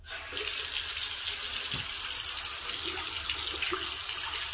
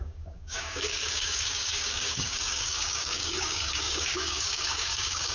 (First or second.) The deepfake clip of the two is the second